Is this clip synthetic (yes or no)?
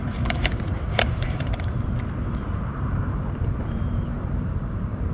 yes